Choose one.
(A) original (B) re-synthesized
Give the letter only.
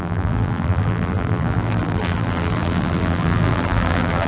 B